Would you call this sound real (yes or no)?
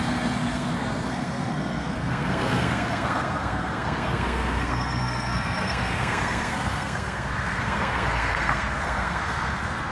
no